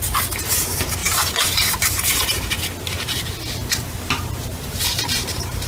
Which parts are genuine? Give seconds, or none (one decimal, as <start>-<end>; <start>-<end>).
0.0-1.0; 2.5-4.5